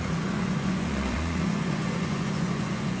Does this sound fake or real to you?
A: fake